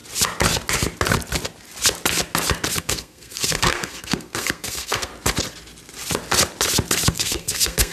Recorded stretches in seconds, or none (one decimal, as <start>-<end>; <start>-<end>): 0.0-2.8; 5.1-7.1